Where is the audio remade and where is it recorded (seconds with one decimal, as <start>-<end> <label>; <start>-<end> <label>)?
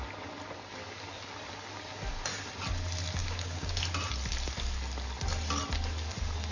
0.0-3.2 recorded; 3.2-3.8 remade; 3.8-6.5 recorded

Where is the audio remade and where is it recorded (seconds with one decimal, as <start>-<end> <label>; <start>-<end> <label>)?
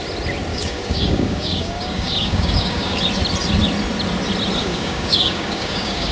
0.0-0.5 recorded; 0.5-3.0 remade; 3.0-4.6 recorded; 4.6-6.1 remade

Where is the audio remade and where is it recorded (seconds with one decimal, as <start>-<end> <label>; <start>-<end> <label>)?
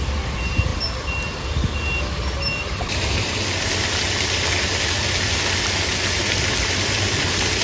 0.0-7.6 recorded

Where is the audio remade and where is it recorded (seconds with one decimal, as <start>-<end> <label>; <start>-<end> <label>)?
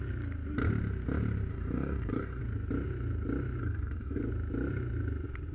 0.0-1.5 recorded; 1.5-2.4 remade; 2.4-3.6 recorded; 3.6-4.2 remade; 4.2-5.5 recorded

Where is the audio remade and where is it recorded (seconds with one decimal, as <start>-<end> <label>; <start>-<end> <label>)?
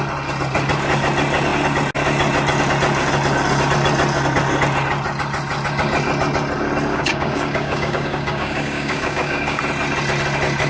0.0-6.9 recorded; 6.9-9.6 remade; 9.6-10.7 recorded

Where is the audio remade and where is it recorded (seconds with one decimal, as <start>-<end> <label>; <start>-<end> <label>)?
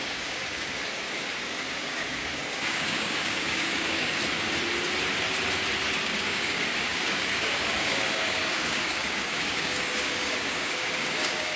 0.0-4.2 remade; 4.2-5.9 recorded; 5.9-11.6 remade